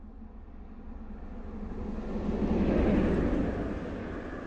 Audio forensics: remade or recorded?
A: recorded